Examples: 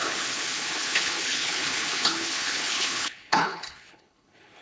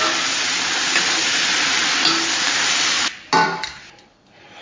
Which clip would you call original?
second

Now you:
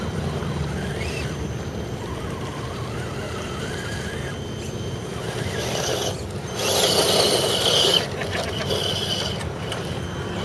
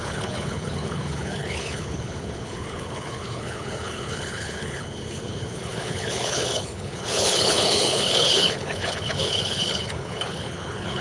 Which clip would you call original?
first